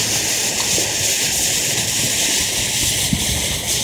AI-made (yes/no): no